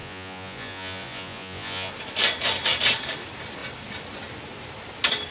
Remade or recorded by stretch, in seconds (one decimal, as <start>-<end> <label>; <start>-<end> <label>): 0.0-1.9 remade; 1.9-5.3 recorded